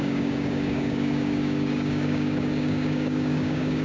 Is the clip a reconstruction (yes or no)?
yes